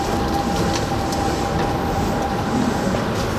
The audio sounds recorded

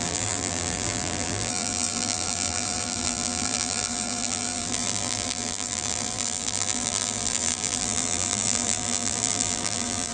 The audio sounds remade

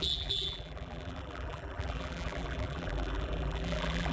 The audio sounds remade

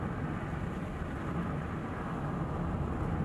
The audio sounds recorded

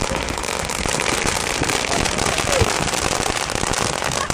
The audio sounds recorded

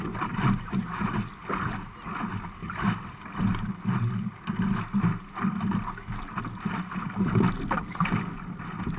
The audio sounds recorded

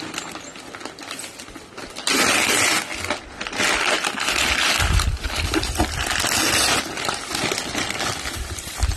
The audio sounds recorded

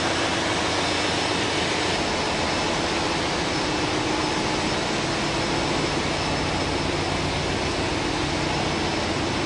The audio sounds recorded